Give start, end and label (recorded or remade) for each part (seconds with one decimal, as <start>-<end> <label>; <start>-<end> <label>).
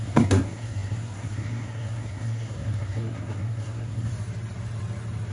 0.0-4.1 remade; 4.1-5.3 recorded